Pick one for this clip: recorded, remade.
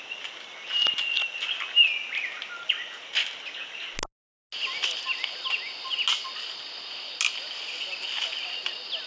recorded